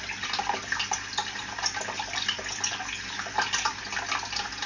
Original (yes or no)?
yes